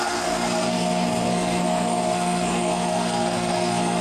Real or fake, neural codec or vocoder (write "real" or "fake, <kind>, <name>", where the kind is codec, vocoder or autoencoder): fake, codec, SNAC